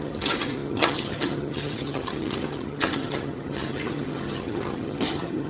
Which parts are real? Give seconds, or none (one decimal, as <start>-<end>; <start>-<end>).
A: none